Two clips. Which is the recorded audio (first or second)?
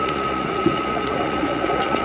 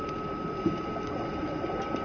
second